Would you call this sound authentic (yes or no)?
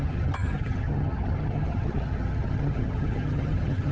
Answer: no